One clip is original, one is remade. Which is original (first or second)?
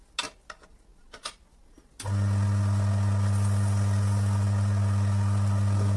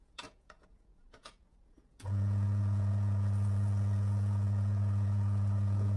first